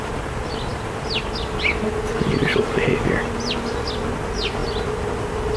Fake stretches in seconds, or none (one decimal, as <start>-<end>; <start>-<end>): none